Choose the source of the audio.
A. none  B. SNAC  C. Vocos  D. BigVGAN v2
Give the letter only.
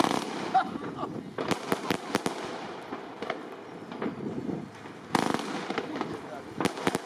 A